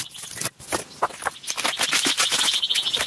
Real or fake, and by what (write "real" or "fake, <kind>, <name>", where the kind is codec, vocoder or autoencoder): real